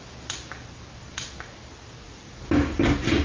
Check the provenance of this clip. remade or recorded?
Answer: recorded